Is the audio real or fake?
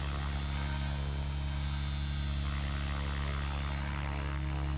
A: real